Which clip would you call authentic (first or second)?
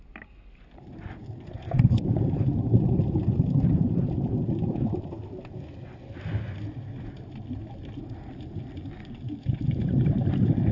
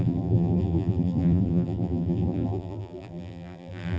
first